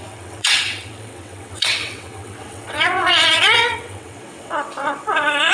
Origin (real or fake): fake